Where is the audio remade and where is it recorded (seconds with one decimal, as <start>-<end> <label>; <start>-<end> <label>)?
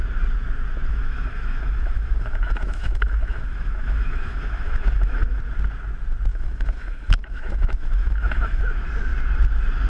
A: 0.0-0.9 recorded; 0.9-5.4 remade; 5.4-6.3 recorded; 6.3-8.6 remade; 8.6-9.9 recorded